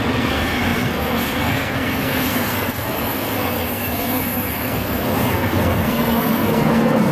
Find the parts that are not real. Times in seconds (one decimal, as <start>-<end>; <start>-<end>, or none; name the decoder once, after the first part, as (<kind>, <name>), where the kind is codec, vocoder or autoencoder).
0.0-7.1 (codec, SNAC)